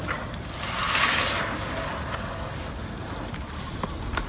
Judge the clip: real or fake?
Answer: real